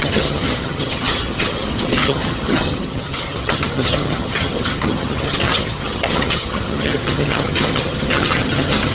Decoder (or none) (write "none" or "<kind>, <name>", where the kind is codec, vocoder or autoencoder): vocoder, HiFi-GAN